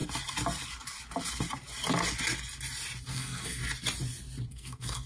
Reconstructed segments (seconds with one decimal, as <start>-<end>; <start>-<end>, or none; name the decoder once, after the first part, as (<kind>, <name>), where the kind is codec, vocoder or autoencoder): 3.1-3.6 (codec, SNAC); 4.5-5.1